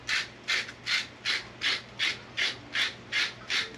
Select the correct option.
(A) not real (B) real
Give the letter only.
B